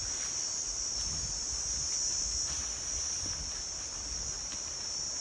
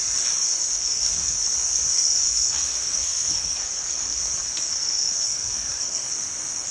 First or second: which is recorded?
first